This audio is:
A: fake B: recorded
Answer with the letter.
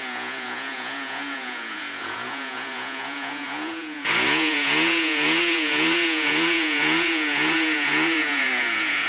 A